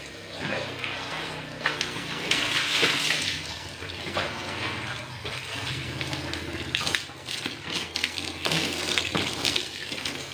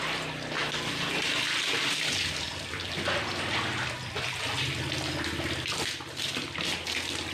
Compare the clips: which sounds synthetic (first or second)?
first